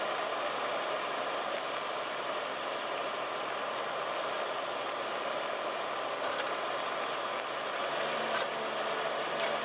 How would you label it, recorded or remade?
recorded